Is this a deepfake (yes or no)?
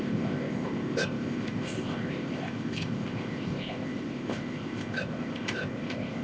yes